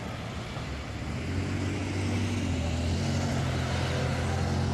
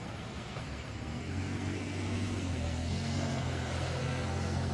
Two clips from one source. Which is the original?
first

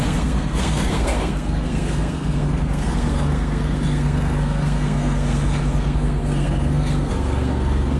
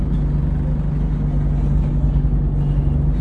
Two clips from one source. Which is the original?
second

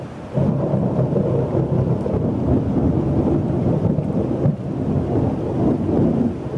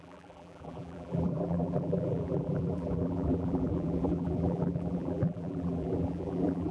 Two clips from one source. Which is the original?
first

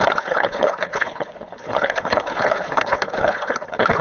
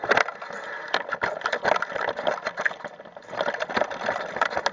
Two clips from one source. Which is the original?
second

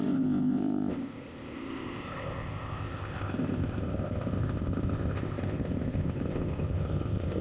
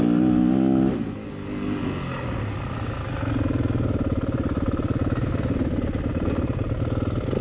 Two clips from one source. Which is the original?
second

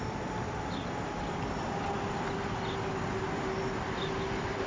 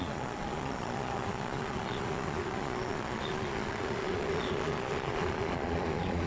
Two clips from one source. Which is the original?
first